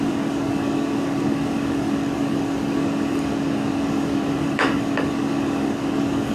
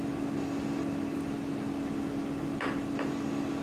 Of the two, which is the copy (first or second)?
first